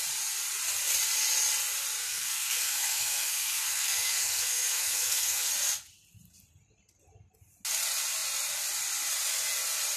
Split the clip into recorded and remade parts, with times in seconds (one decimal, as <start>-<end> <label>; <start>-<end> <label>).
0.0-2.0 recorded; 2.0-5.5 remade; 5.5-10.0 recorded